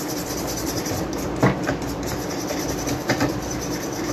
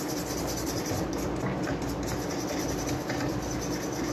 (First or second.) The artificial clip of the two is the first